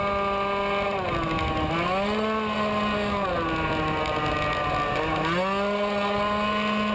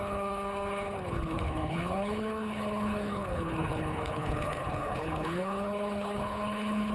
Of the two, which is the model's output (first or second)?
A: second